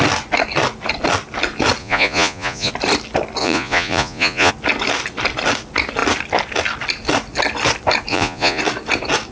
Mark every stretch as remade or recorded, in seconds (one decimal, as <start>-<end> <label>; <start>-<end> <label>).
0.0-1.8 recorded; 1.8-2.7 remade; 2.7-3.4 recorded; 3.4-4.5 remade; 4.5-8.1 recorded; 8.1-8.6 remade; 8.6-9.3 recorded